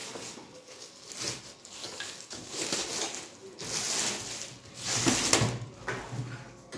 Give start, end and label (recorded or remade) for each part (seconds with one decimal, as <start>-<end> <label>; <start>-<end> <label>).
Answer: 0.0-1.1 remade; 1.1-1.8 recorded; 1.8-3.0 remade; 3.0-6.8 recorded